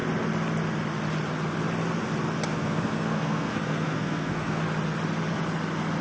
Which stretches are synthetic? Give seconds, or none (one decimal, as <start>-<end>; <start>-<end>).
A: 2.5-4.6